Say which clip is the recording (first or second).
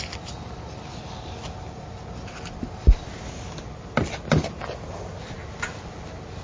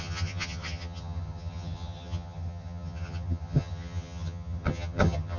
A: first